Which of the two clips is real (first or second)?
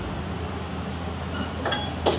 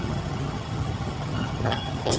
first